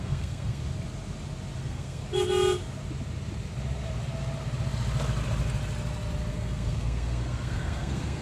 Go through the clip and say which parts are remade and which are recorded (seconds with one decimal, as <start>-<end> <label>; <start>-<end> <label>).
0.0-0.6 remade; 0.6-1.6 recorded; 1.6-2.0 remade; 2.0-6.3 recorded; 6.3-8.2 remade